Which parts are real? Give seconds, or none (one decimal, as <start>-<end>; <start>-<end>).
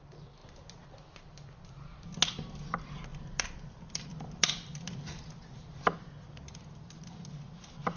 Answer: 0.0-3.1; 5.2-8.0